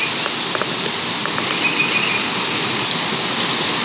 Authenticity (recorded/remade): recorded